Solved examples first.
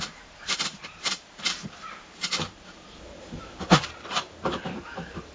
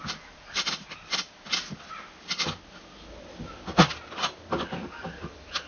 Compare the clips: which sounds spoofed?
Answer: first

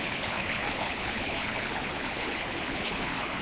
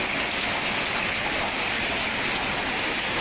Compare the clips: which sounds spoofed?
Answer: first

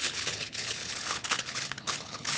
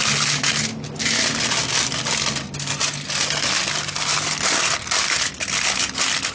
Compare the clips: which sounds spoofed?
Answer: first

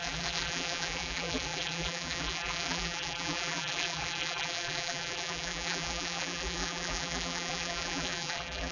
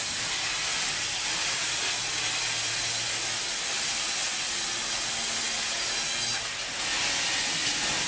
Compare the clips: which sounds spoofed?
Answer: first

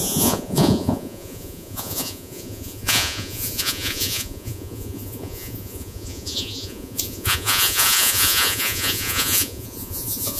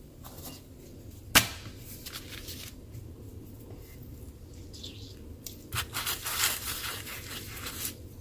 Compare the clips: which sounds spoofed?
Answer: first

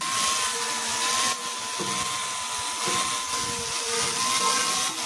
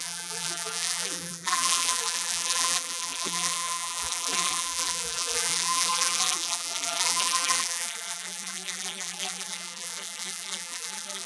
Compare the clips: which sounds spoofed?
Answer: second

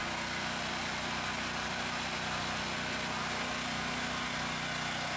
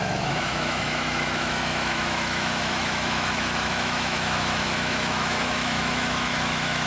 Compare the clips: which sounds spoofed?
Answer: second